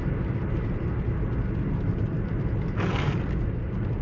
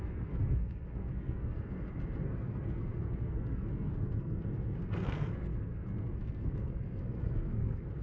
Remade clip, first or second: second